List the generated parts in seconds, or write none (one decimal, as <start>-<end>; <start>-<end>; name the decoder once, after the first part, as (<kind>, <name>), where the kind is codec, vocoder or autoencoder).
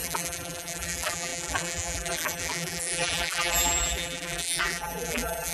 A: 0.0-5.5 (vocoder, BigVGAN v2)